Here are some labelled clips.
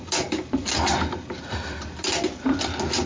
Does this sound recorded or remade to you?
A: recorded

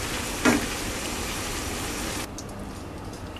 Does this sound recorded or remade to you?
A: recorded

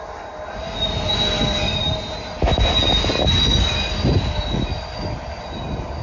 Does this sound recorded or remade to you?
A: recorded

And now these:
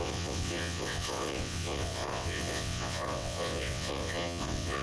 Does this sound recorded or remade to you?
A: remade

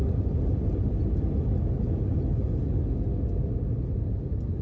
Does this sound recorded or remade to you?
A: recorded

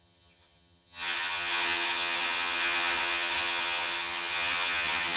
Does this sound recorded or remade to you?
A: remade